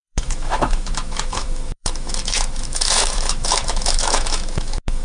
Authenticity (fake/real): fake